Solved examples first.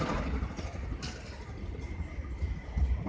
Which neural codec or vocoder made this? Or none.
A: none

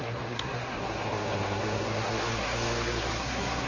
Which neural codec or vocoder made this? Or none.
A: codec, SNAC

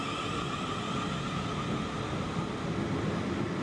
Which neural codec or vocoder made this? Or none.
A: none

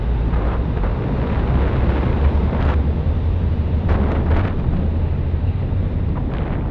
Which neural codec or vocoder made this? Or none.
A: none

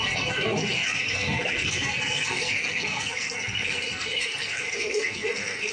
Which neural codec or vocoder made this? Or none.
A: codec, SNAC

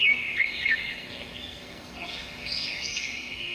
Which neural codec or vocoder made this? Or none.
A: codec, SNAC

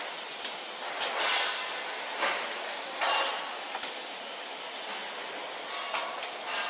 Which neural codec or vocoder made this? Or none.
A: none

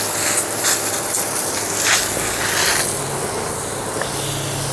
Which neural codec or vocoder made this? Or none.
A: none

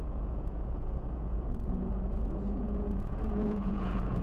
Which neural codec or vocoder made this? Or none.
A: vocoder, Vocos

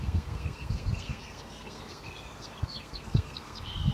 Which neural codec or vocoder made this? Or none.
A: codec, SNAC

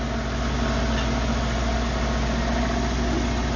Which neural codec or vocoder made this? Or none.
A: none